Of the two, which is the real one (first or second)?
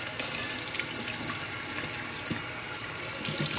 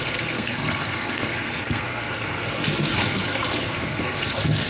first